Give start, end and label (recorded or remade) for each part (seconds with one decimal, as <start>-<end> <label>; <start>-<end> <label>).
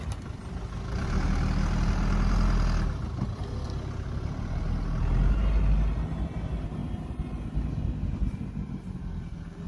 0.0-9.7 recorded